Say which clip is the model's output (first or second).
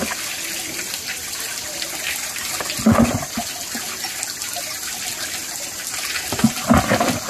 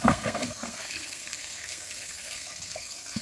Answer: second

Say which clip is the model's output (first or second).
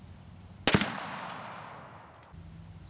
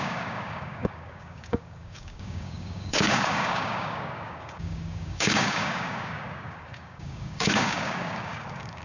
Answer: second